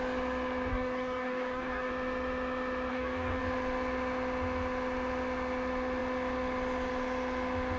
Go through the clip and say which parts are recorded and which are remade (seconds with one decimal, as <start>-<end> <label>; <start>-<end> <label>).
0.0-0.7 recorded; 0.7-1.9 remade; 1.9-2.9 recorded; 2.9-3.4 remade; 3.4-7.8 recorded